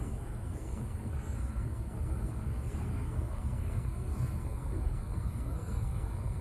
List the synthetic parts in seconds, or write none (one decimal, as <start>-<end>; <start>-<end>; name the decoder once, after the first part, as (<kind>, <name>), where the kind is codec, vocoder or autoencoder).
0.0-6.4 (codec, SNAC)

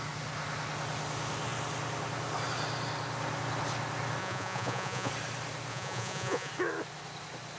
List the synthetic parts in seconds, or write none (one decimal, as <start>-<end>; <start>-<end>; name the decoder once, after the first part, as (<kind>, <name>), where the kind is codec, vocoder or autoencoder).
4.2-5.1 (vocoder, Vocos); 5.7-6.5

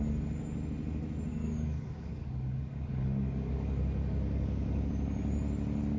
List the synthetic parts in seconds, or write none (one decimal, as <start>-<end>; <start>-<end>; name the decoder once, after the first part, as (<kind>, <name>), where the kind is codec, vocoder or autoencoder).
1.3-4.9 (codec, DAC)

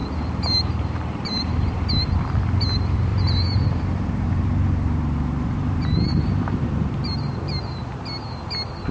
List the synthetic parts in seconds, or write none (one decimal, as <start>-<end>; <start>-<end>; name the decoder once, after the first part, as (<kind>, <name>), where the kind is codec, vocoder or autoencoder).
0.0-1.9 (vocoder, BigVGAN v2); 3.1-8.0

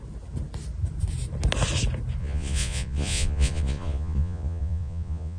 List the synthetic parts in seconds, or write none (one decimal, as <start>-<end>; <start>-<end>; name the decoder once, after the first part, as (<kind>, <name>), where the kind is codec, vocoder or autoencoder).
2.2-5.4 (vocoder, Vocos)

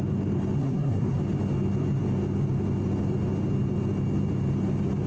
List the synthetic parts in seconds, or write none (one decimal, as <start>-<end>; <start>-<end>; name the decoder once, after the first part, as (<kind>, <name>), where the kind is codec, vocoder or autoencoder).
0.6-1.2 (codec, SNAC)

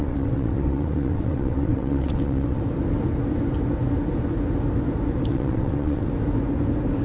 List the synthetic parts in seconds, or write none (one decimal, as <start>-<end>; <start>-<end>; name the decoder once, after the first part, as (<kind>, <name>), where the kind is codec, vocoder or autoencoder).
0.0-2.6 (vocoder, WaveNeXt); 5.3-6.1